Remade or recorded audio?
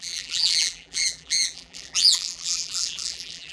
remade